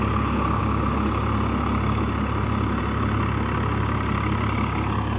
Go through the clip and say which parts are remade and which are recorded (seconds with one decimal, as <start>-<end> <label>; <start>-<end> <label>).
0.0-5.2 recorded